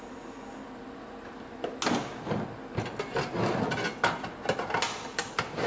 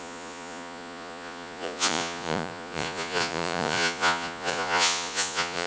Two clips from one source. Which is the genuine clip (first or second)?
first